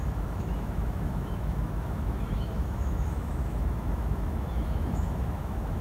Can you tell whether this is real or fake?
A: fake